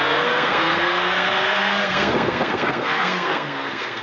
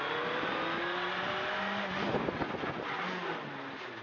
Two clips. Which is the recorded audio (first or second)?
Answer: second